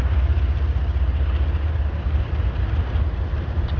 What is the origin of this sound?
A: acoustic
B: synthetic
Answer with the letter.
A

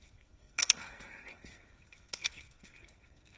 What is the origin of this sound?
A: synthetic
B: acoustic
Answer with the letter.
A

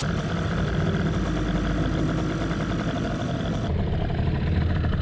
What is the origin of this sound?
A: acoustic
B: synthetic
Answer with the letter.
A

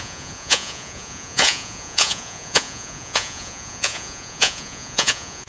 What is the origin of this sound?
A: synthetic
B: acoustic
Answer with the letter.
A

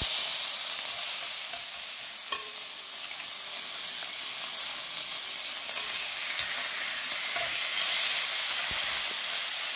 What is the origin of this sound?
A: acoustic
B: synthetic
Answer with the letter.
A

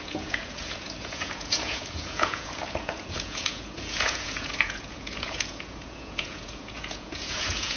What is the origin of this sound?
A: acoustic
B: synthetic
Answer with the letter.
B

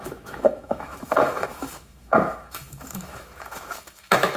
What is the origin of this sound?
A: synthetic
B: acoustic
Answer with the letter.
A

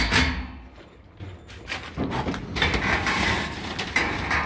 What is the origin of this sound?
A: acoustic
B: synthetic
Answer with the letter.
A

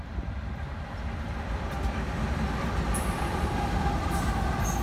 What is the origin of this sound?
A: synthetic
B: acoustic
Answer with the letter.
A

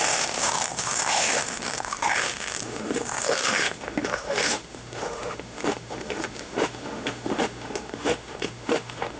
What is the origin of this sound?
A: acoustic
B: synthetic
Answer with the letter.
B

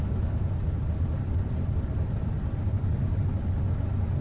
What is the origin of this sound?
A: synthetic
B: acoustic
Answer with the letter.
B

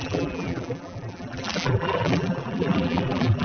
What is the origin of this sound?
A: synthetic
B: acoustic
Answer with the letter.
A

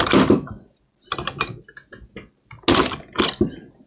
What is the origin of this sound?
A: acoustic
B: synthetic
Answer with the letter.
A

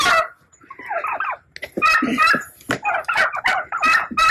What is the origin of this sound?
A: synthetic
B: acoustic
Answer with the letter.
B